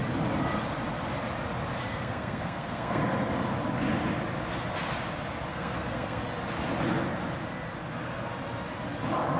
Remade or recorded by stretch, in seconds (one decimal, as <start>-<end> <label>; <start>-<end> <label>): 0.0-1.9 recorded; 1.9-3.0 remade; 3.0-5.5 recorded; 5.5-6.2 remade; 6.2-9.4 recorded